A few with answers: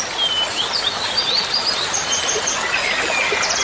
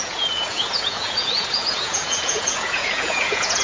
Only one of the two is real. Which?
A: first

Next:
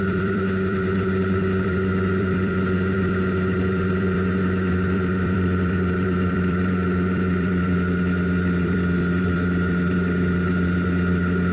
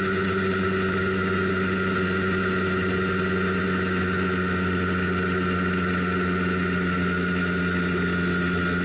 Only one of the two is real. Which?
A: second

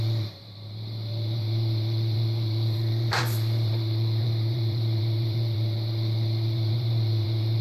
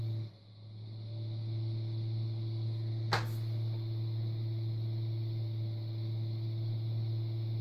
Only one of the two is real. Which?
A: second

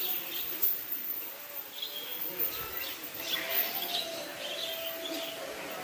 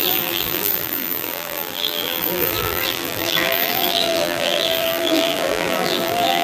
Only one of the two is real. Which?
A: first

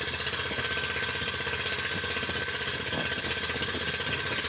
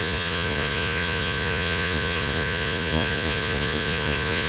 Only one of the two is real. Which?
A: first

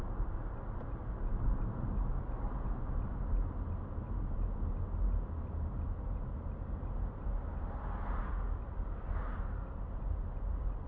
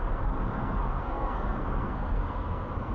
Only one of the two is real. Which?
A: first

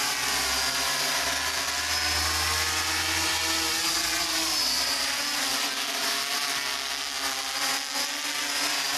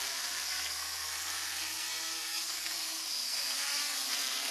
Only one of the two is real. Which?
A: first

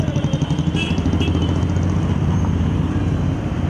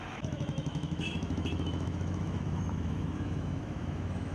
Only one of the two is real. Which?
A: first